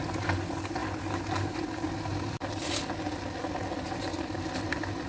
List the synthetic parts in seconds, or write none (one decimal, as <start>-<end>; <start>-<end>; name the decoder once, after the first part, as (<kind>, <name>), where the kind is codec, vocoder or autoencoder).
none